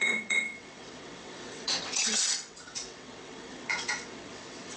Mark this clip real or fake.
fake